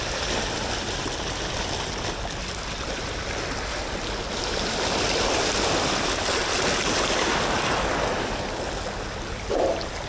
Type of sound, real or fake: real